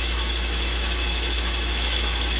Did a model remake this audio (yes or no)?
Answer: yes